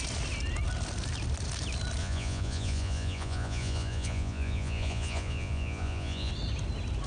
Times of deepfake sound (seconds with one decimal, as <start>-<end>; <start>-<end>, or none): 2.0-6.3